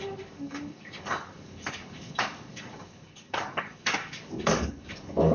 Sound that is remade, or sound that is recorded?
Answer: remade